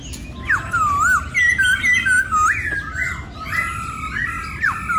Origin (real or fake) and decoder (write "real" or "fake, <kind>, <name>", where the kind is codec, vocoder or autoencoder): real